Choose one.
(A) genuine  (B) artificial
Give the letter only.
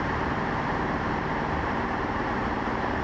B